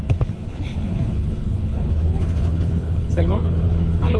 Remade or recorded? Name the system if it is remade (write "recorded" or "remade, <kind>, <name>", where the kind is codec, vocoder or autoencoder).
remade, codec, HILCodec